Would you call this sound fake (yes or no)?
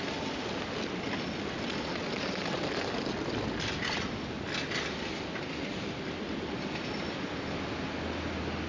no